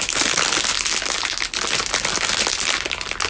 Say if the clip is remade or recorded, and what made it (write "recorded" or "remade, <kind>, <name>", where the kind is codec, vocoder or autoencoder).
recorded